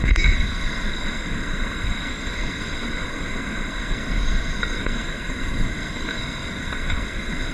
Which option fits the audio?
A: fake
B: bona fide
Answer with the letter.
A